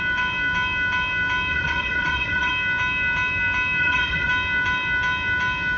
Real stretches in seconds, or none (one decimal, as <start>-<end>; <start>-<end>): 0.0-1.5; 2.5-3.8; 4.3-5.8